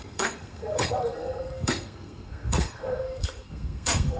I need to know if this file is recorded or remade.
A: remade